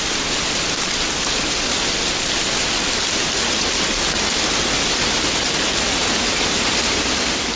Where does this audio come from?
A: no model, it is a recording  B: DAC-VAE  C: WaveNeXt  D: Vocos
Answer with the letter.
A